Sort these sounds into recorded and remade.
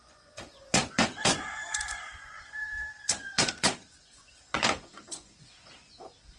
remade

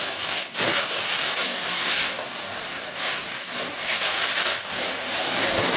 remade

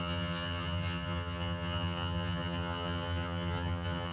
remade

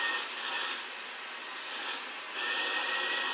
recorded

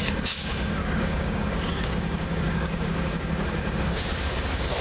remade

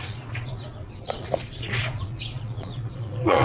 remade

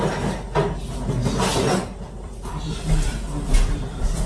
recorded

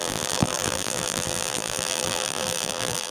remade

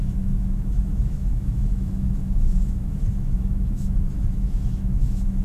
remade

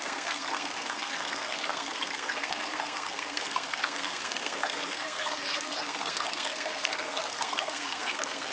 remade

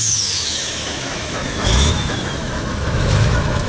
remade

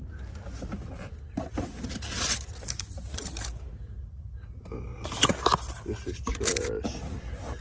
recorded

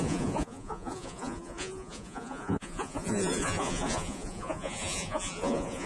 remade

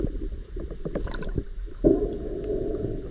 recorded